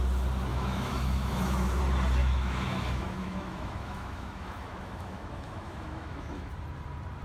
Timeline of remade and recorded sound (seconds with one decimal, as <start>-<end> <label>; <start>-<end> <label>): 0.0-0.5 recorded; 0.5-1.8 remade; 1.8-2.2 recorded; 2.2-6.5 remade; 6.5-7.2 recorded